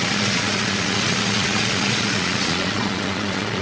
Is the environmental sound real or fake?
fake